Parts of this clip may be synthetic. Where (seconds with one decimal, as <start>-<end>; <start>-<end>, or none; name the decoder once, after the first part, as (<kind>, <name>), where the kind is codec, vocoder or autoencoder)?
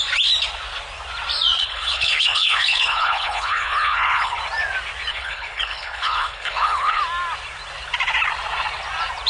1.6-4.4 (codec, HILCodec); 5.1-7.0